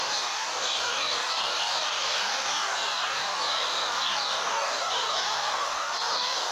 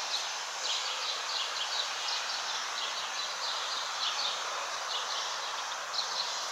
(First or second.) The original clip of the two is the second